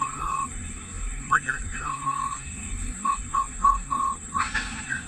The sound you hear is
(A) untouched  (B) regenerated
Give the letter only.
B